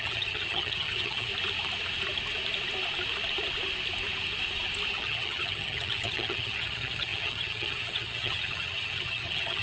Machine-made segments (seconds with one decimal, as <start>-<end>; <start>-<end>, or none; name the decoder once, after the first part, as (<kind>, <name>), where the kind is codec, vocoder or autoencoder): 0.0-1.3 (vocoder, HiFi-GAN); 4.9-9.6